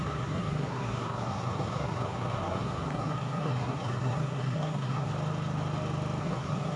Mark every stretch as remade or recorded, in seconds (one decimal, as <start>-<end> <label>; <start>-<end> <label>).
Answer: 0.0-5.1 remade; 5.1-6.2 recorded; 6.2-6.8 remade